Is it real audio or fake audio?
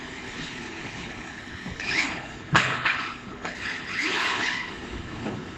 fake